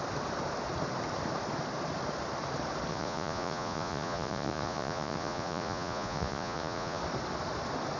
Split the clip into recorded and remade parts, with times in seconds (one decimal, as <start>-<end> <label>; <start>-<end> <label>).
0.0-2.9 recorded; 2.9-7.0 remade; 7.0-8.0 recorded